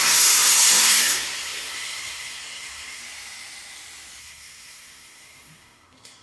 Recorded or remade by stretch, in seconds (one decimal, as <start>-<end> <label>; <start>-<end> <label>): 0.0-3.0 remade; 3.0-4.2 recorded; 4.2-6.2 remade